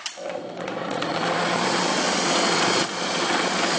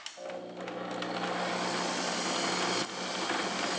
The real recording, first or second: second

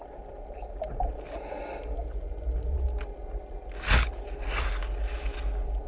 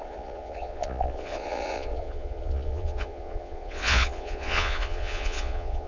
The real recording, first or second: first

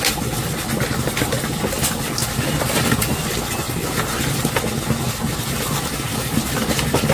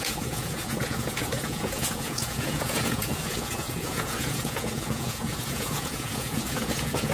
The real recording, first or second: first